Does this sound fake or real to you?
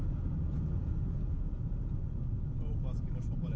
fake